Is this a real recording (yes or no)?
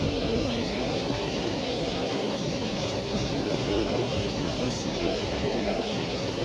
no